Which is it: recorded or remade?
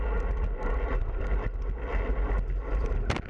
recorded